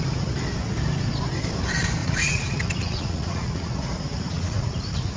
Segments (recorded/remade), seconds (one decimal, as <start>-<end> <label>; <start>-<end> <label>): 0.0-2.0 recorded; 2.0-5.2 remade